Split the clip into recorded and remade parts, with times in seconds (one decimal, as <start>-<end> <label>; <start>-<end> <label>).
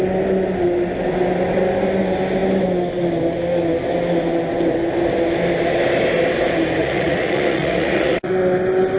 0.0-6.8 recorded; 6.8-8.3 remade; 8.3-9.0 recorded